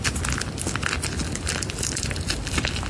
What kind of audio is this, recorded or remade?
recorded